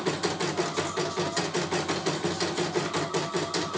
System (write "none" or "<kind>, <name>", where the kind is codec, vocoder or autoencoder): none